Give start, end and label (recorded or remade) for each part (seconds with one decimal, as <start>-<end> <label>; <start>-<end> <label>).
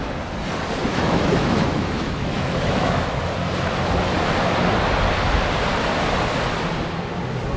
0.0-0.9 recorded; 0.9-3.2 remade; 3.2-7.6 recorded